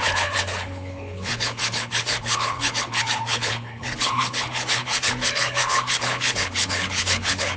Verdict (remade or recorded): remade